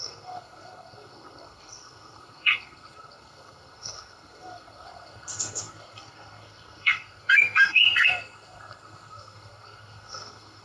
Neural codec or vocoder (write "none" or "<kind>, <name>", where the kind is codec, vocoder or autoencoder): codec, SNAC